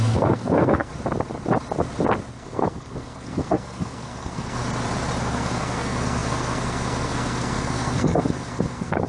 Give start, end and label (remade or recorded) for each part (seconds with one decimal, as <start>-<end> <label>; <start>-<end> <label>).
0.0-0.9 remade; 0.9-2.3 recorded; 2.3-4.6 remade; 4.6-5.2 recorded; 5.2-9.1 remade